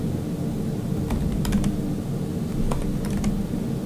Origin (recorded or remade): recorded